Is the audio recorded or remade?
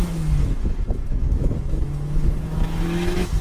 remade